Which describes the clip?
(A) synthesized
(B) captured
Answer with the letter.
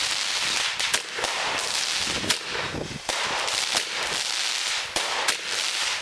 B